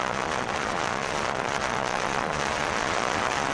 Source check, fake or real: fake